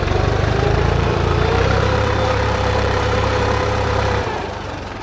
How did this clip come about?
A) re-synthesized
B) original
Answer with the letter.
A